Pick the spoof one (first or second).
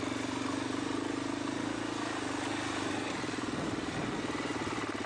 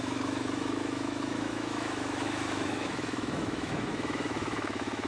second